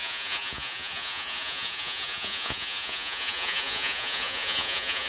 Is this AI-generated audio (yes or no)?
yes